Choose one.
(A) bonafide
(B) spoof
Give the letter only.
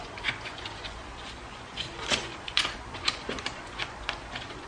B